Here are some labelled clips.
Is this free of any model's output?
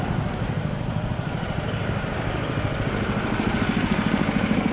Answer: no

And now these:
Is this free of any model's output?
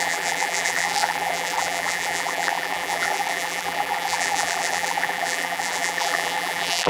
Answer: no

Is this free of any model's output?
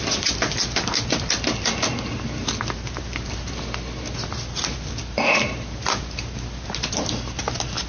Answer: yes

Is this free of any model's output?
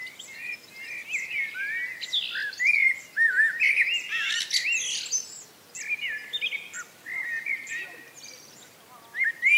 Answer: yes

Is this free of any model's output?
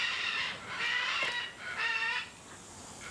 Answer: no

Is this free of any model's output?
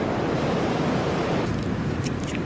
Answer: no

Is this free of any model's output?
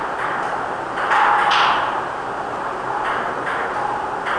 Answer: yes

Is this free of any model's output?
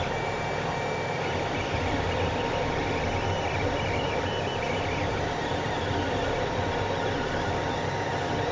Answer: no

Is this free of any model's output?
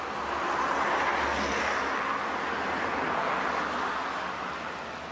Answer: yes